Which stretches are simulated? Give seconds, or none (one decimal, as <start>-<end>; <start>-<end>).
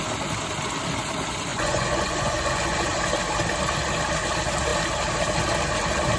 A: 1.5-3.0